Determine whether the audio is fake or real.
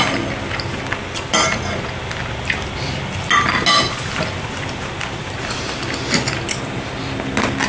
real